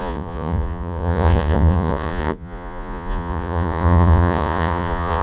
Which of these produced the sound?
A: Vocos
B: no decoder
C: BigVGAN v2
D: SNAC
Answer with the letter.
A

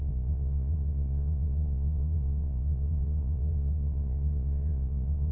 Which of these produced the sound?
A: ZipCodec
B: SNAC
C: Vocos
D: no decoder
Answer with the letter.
C